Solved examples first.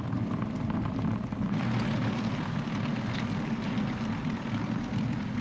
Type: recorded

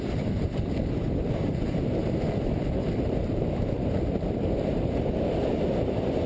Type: remade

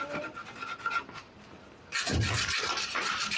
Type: recorded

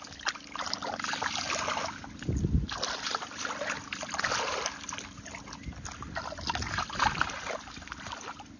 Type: recorded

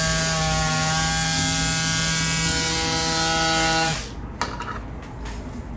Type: recorded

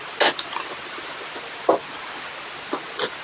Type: recorded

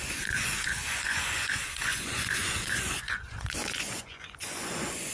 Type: remade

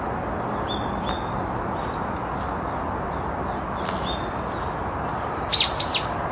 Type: recorded